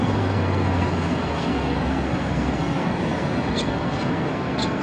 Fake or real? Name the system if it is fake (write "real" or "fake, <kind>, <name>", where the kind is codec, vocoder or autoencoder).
fake, codec, SNAC